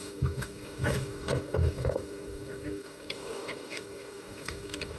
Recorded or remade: remade